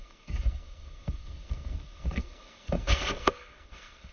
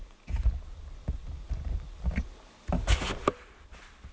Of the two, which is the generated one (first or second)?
first